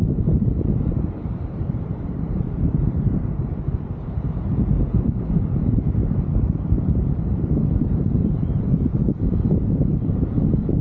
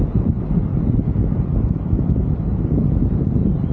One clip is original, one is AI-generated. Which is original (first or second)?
second